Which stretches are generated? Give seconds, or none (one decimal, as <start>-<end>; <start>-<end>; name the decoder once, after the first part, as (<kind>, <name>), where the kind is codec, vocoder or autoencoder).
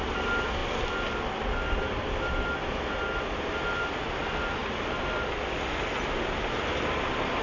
none